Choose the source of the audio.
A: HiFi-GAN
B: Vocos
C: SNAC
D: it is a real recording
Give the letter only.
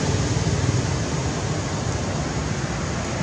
D